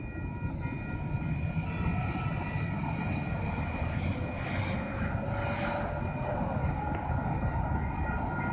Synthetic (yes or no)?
no